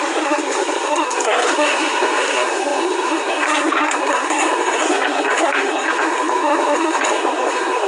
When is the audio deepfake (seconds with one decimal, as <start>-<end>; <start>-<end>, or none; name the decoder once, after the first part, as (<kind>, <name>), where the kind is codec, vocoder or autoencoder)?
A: 0.0-7.9 (codec, SNAC)